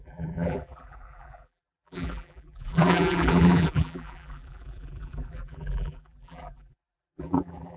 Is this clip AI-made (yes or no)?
yes